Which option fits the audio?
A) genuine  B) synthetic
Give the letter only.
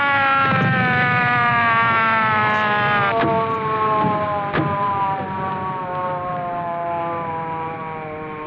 A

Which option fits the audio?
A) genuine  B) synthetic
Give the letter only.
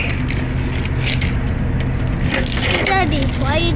A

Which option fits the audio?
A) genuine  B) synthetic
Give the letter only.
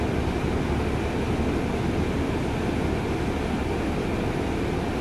A